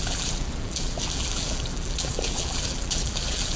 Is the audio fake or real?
fake